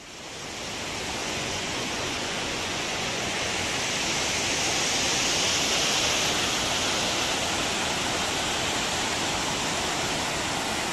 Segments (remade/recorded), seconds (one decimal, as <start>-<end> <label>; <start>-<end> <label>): 0.0-1.2 recorded; 1.2-3.5 remade; 3.5-10.9 recorded